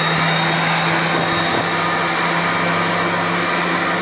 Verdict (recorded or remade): recorded